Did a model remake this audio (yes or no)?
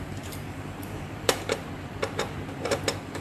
yes